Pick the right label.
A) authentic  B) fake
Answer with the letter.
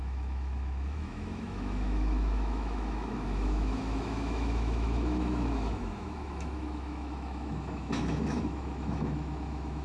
B